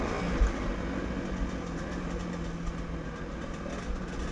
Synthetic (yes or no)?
no